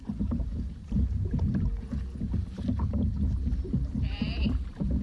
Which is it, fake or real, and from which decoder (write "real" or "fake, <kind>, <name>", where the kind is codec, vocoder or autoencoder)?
fake, vocoder, BigVGAN v2